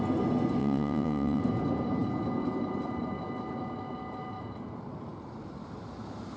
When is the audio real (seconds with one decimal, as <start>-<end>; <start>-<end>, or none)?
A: 0.0-0.6; 1.4-6.4